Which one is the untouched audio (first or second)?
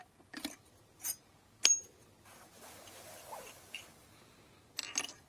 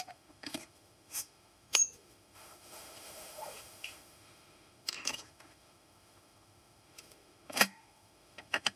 first